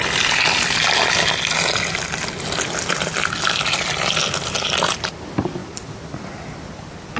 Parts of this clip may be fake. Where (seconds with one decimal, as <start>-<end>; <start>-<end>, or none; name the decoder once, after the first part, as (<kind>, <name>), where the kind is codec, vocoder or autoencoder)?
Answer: none